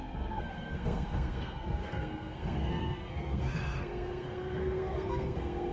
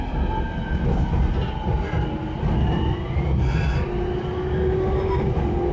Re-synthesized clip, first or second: first